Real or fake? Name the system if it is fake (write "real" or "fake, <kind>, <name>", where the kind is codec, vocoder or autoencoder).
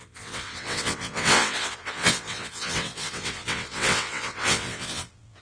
fake, vocoder, WaveNeXt